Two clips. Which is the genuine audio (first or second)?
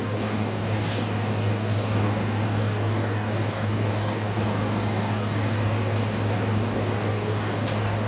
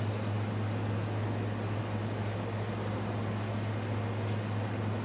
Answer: second